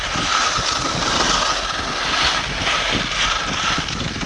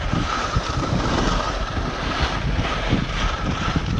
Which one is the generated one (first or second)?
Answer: second